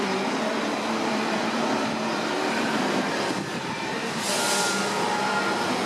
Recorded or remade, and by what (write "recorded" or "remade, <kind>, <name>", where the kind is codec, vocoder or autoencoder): remade, vocoder, BigVGAN v2